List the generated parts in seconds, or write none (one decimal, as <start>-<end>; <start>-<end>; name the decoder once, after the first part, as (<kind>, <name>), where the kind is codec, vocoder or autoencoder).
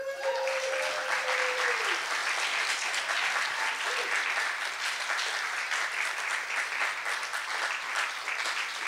0.0-2.2 (vocoder, BigVGAN v2); 3.0-7.3; 8.1-8.9